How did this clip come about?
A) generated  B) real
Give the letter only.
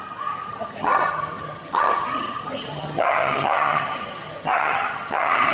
A